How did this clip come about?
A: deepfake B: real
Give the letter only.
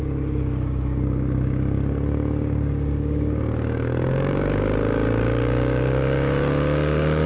A